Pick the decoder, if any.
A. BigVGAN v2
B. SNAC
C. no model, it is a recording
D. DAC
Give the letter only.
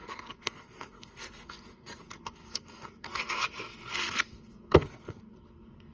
B